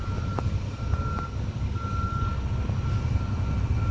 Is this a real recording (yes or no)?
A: yes